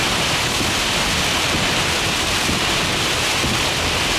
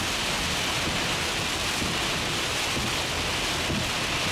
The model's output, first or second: first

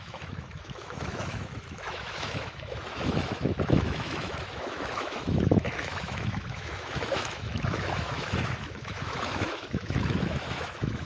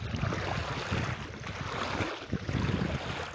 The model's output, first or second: first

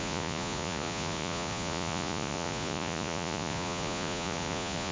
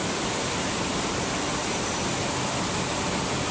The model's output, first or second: first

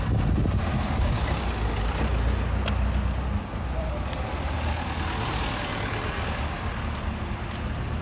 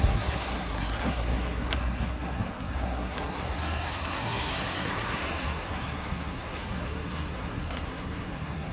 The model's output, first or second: second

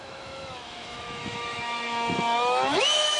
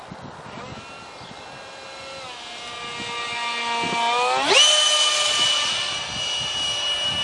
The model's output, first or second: first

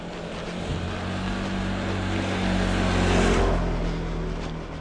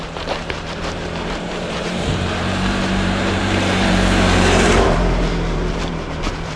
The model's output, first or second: second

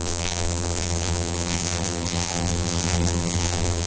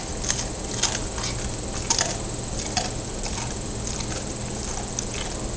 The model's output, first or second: first